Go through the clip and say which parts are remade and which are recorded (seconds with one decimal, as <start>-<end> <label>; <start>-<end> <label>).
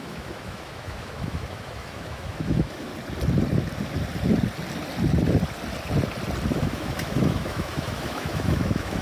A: 0.0-2.9 remade; 2.9-6.6 recorded; 6.6-9.0 remade